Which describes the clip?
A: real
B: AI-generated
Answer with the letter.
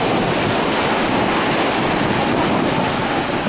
A